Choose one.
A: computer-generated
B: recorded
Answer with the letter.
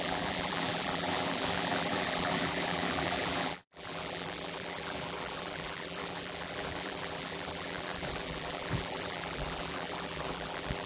A